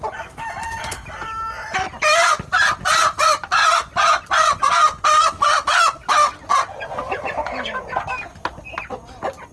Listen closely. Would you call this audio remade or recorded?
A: recorded